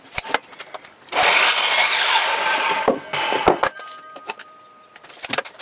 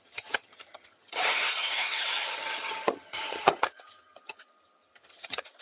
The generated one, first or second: second